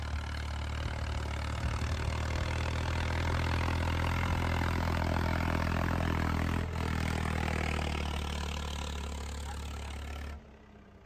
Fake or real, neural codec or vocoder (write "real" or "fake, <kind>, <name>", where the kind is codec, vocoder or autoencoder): real